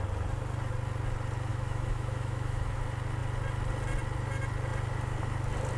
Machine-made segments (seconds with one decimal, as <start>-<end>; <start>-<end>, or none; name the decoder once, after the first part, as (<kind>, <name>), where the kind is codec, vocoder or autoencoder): 1.5-2.8 (autoencoder, DAC-VAE)